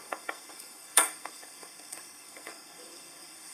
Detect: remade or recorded remade